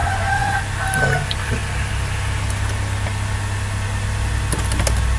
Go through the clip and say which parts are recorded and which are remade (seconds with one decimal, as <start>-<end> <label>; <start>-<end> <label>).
0.0-0.6 remade; 0.6-5.2 recorded